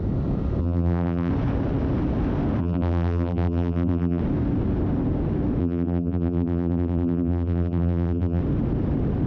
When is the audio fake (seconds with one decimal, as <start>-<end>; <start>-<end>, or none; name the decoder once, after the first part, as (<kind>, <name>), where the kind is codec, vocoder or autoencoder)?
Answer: 0.6-1.3 (vocoder, BigVGAN v2); 2.6-4.2; 5.6-8.4